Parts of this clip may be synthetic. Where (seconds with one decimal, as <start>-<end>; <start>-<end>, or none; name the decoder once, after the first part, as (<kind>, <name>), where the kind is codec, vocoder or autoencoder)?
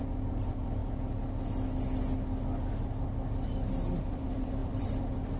0.0-0.8 (vocoder, BigVGAN v2); 4.0-5.4